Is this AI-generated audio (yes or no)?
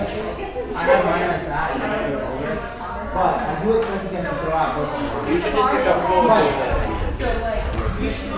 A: no